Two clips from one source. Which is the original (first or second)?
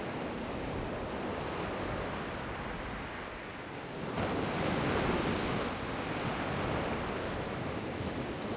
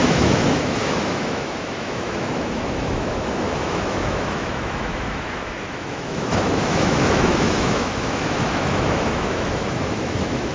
first